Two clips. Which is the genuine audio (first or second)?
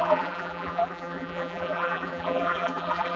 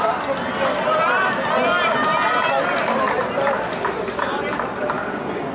second